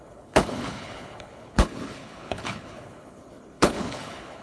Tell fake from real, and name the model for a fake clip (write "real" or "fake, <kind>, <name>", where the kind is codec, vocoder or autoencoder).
fake, codec, HILCodec